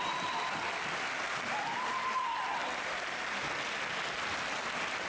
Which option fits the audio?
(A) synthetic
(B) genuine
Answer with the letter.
B